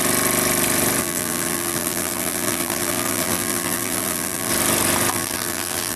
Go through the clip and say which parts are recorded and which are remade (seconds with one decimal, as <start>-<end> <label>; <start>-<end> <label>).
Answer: 0.0-1.0 recorded; 1.0-4.5 remade; 4.5-5.1 recorded; 5.1-6.0 remade